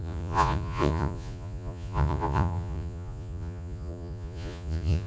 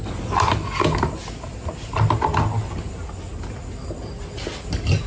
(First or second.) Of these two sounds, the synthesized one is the first